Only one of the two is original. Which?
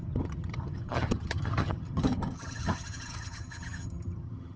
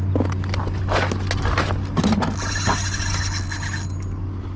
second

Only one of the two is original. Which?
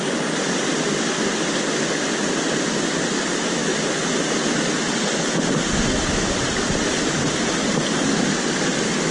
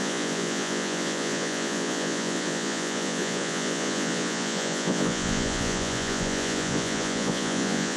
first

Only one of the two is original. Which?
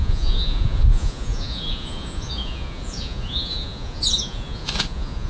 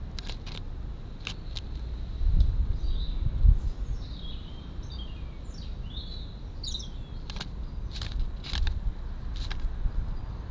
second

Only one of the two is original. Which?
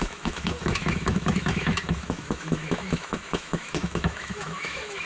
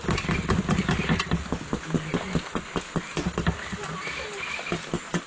second